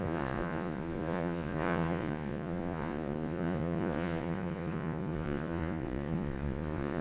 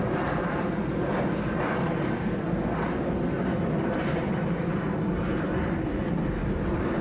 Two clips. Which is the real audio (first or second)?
second